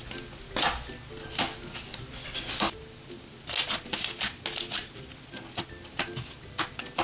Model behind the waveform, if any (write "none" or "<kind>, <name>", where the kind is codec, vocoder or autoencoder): none